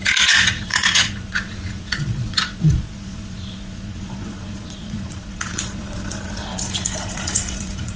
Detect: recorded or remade remade